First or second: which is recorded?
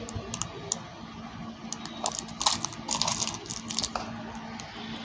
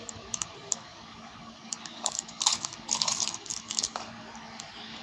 first